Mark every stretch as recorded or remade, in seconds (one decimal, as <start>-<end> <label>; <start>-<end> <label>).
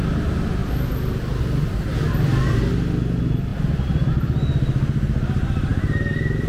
0.0-0.6 recorded; 0.6-1.4 remade; 1.4-1.9 recorded; 1.9-2.4 remade; 2.4-3.5 recorded; 3.5-4.1 remade; 4.1-5.7 recorded; 5.7-6.5 remade